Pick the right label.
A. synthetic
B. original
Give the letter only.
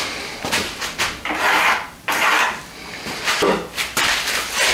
A